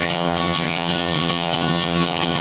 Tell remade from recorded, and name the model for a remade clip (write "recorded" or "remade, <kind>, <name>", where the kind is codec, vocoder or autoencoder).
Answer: remade, vocoder, HiFi-GAN